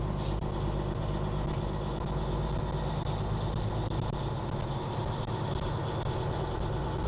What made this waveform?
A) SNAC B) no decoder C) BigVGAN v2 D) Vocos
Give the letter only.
B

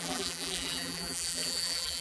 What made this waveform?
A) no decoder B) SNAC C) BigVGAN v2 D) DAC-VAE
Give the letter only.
C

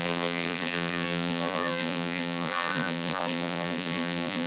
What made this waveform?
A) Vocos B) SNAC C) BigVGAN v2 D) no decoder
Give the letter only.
C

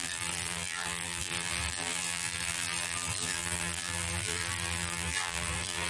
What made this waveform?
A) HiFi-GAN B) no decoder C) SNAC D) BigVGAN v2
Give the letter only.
D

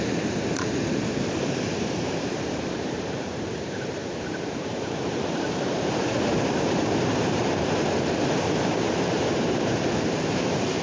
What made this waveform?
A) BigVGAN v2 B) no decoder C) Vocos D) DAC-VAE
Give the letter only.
A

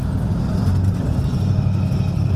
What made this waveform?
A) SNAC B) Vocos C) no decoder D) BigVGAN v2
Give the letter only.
C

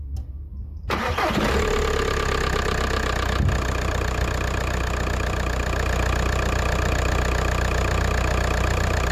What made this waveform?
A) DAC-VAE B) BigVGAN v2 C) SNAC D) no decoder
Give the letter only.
D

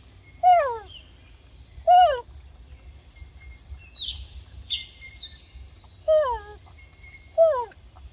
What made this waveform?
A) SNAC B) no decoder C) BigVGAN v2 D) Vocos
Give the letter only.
B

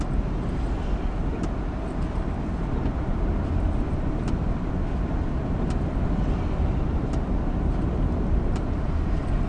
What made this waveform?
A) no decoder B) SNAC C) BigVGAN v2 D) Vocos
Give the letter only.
A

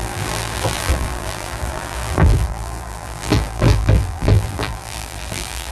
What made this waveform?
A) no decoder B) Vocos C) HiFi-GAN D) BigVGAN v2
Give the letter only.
D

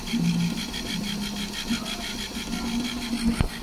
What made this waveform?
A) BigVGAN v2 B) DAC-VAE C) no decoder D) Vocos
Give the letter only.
C